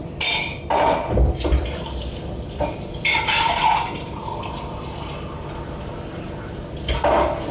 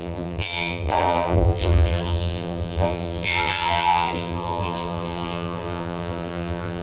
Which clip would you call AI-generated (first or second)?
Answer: second